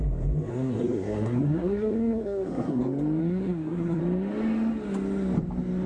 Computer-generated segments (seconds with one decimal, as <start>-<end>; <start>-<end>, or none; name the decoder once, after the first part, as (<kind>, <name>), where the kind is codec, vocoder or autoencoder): 0.5-2.8 (codec, SNAC); 3.2-4.0